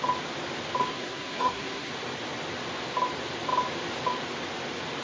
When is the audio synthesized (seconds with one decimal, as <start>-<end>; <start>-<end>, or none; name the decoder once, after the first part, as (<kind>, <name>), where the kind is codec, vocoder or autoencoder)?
0.9-1.9 (codec, SNAC)